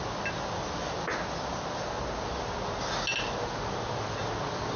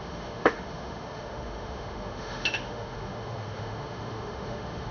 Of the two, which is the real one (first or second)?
first